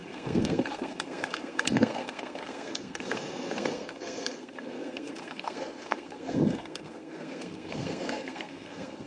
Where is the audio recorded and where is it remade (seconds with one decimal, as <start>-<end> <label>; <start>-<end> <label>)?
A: 0.0-9.1 remade

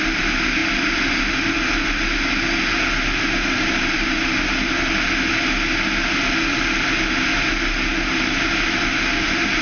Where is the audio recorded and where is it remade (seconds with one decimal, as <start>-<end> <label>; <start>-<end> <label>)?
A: 0.0-9.6 recorded